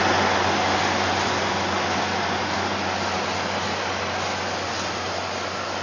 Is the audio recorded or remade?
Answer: recorded